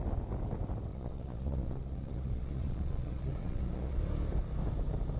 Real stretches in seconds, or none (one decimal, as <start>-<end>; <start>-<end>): 0.0-0.9; 4.0-5.2